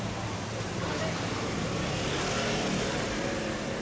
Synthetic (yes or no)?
no